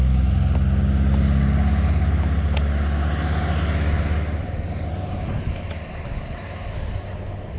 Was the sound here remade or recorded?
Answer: recorded